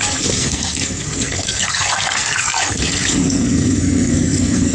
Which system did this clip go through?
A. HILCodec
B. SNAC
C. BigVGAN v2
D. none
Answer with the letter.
B